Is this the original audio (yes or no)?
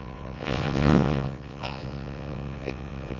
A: no